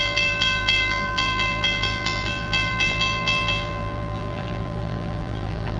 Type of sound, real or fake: fake